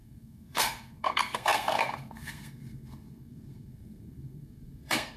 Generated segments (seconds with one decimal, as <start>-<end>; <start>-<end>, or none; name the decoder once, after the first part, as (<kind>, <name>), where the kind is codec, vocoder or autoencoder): 0.0-5.2 (codec, SNAC)